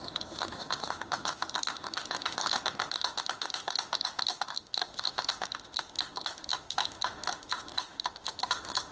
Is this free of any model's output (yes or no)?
no